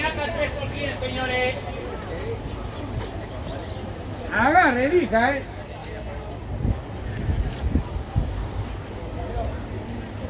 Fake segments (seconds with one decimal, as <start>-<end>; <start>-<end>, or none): none